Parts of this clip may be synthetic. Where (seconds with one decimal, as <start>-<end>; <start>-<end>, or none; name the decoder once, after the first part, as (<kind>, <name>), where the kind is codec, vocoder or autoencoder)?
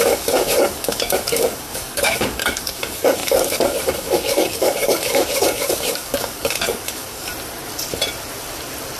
0.0-7.3 (codec, DAC)